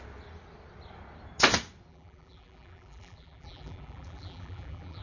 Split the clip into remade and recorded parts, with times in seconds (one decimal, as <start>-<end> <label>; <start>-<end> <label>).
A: 0.0-1.9 recorded; 1.9-5.0 remade